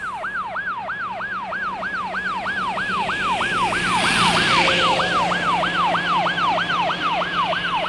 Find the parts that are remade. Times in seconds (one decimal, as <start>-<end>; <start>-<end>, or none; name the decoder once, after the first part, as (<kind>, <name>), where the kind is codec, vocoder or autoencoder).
none

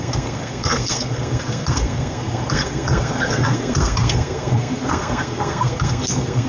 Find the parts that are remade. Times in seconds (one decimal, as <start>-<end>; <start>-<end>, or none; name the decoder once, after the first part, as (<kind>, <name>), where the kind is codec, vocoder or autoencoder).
0.0-6.5 (codec, SNAC)